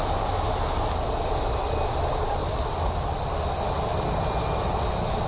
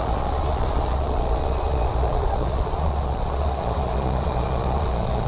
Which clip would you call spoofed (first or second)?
second